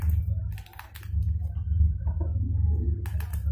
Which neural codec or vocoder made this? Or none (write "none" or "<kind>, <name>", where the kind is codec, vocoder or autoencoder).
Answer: none